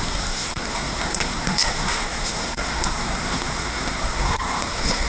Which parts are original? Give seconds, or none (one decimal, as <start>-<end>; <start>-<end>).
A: none